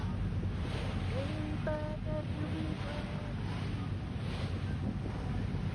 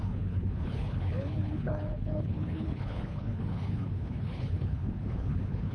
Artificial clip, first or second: second